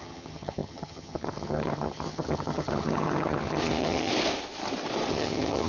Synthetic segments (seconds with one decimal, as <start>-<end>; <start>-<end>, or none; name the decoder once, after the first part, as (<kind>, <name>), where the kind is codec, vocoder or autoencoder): 0.0-4.1 (vocoder, HiFi-GAN); 5.1-5.7